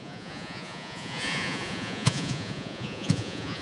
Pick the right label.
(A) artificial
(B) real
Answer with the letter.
A